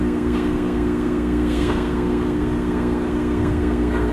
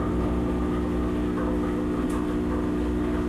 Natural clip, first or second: second